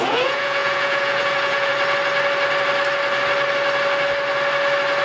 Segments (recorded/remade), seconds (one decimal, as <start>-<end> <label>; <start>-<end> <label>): 0.0-1.7 remade; 1.7-5.0 recorded